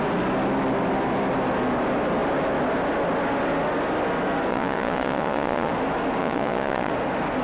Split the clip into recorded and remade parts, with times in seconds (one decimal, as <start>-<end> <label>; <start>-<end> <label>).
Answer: 0.0-4.5 recorded; 4.5-5.7 remade; 5.7-6.2 recorded; 6.2-6.9 remade; 6.9-7.4 recorded